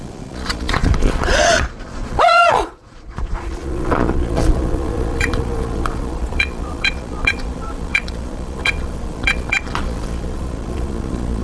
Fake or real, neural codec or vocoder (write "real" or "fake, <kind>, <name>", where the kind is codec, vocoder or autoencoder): fake, vocoder, Vocos